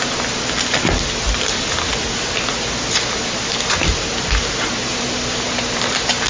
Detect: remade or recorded recorded